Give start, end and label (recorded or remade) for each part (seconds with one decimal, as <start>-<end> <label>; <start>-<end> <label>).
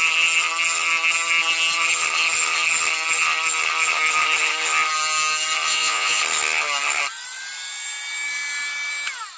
0.0-5.7 recorded; 5.7-6.2 remade; 6.2-9.4 recorded